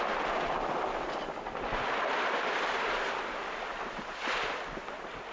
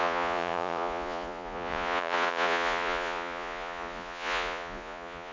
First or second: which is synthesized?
second